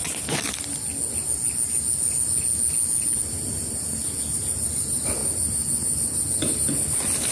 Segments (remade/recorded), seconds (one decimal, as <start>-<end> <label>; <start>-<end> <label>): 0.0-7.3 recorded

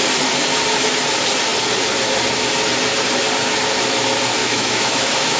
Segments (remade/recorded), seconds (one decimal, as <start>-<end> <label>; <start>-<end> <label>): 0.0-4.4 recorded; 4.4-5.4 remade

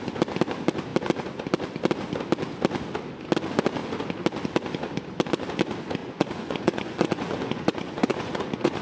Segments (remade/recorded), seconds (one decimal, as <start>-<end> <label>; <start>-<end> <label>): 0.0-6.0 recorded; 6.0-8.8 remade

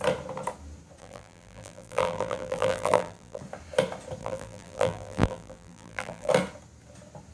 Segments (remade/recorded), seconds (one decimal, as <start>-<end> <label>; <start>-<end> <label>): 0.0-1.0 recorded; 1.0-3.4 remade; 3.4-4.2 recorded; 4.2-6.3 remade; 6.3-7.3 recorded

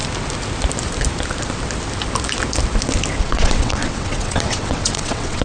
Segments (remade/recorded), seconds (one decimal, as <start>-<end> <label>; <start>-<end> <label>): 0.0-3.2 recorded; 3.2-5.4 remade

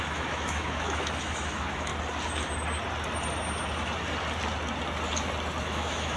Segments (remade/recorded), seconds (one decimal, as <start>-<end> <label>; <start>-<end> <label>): 0.0-1.9 remade; 1.9-5.6 recorded; 5.6-6.2 remade

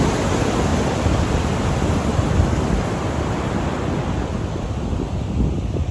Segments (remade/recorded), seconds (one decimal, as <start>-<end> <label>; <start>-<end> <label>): 0.0-0.7 recorded; 0.7-4.2 remade; 4.2-5.9 recorded